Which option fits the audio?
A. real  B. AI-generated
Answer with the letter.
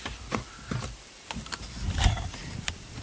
B